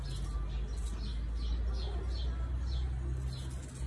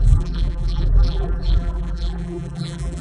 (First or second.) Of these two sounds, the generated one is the second